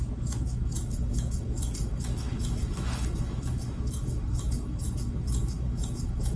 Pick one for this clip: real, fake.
fake